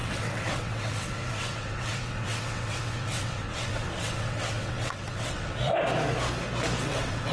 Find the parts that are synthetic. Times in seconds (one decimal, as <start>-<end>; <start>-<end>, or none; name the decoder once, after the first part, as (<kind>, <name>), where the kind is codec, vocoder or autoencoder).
0.0-5.6 (vocoder, WaveNeXt); 6.8-7.3